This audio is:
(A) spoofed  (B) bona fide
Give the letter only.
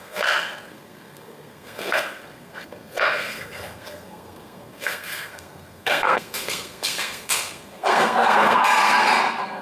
A